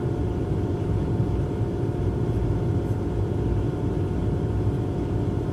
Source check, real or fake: fake